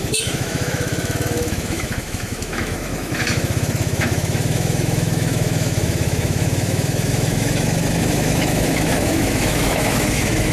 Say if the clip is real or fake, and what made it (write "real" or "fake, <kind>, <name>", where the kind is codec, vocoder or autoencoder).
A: fake, autoencoder, DAC-VAE